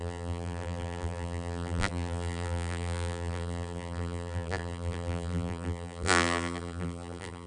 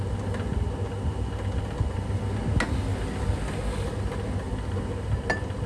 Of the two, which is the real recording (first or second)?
second